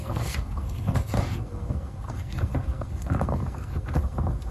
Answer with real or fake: fake